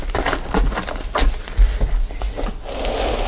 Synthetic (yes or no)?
no